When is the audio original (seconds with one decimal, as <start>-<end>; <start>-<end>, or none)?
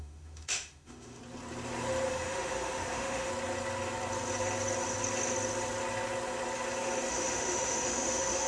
1.2-2.1; 3.3-7.1